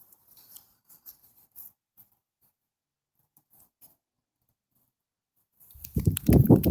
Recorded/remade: recorded